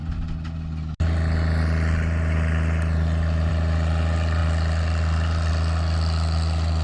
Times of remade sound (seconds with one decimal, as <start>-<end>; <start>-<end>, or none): none